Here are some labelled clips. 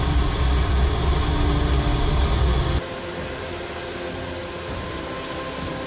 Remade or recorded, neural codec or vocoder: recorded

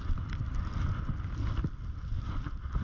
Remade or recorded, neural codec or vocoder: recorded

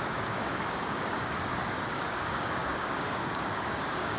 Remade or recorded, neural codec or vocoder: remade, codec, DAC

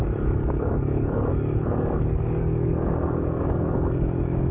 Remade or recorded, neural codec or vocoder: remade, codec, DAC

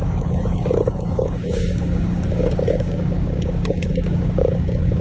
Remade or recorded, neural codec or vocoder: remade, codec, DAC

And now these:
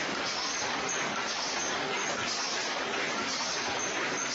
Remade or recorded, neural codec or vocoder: remade, codec, DAC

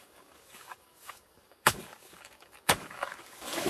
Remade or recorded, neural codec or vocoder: remade, codec, DAC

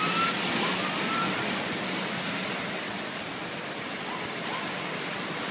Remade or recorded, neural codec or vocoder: recorded